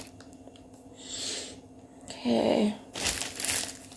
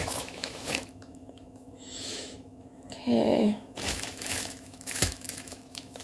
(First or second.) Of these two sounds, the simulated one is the second